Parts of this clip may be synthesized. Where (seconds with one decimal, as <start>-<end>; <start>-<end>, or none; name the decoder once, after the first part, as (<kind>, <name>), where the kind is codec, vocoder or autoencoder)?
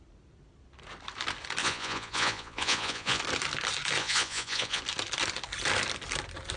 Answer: 1.6-3.2 (vocoder, Vocos); 4.0-4.8